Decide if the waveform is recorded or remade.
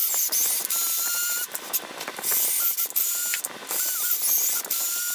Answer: recorded